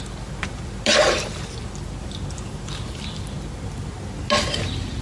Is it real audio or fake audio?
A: real